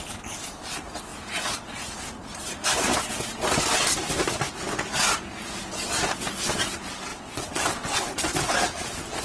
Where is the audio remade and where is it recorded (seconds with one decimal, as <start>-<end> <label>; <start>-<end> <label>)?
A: 0.0-7.1 recorded; 7.1-8.0 remade; 8.0-9.2 recorded